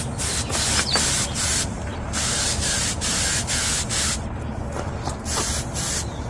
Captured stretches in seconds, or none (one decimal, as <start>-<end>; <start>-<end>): 0.0-6.3